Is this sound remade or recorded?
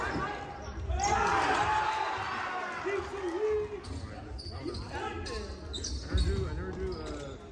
recorded